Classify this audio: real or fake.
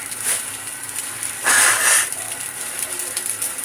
fake